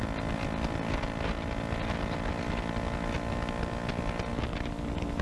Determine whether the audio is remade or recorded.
recorded